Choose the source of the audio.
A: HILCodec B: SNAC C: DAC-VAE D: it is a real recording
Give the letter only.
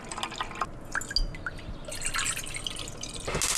D